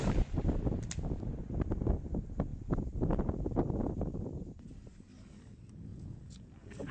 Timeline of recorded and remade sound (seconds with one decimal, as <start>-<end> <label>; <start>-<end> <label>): 0.0-5.9 recorded; 5.9-6.5 remade; 6.5-6.9 recorded